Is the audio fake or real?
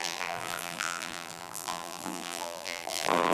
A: fake